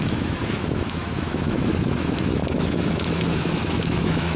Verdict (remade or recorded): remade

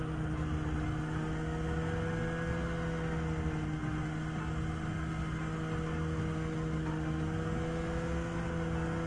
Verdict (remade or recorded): recorded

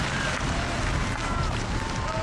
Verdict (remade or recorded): recorded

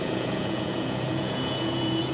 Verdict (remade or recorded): remade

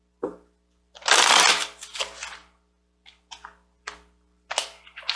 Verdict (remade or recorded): recorded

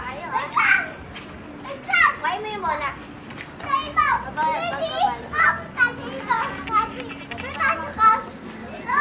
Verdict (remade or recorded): recorded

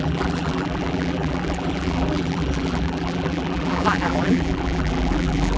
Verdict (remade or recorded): remade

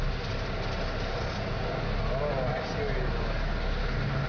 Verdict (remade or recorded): recorded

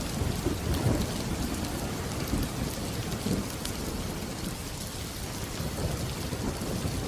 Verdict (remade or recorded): recorded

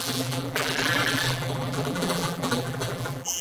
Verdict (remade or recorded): remade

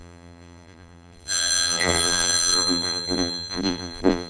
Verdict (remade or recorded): remade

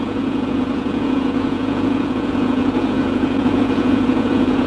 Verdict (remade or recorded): remade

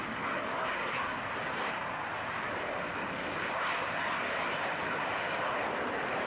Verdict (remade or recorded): recorded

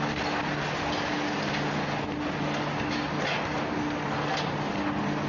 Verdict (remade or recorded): recorded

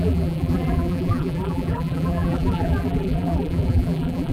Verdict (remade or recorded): remade